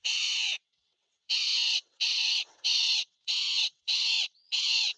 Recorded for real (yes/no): no